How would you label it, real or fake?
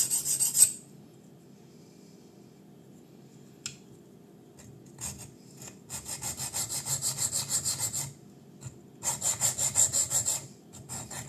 real